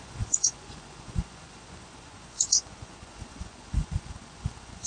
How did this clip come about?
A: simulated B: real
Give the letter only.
A